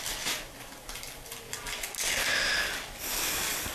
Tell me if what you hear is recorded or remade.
recorded